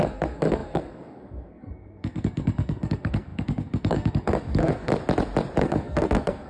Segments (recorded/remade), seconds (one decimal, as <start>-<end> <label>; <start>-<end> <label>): 0.0-4.9 remade; 4.9-5.6 recorded; 5.6-6.5 remade